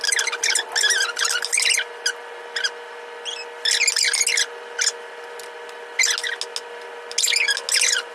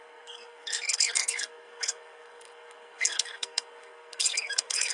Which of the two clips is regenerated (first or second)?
second